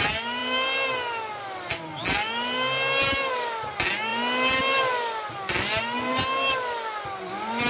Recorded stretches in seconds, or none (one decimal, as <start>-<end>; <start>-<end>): 0.0-7.7